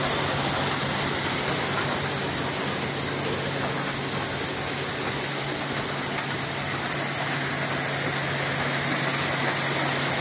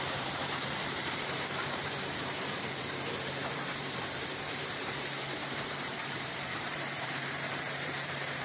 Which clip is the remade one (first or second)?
second